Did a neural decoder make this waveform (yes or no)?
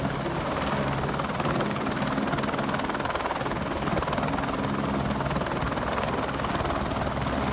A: no